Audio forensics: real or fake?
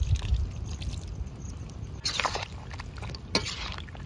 real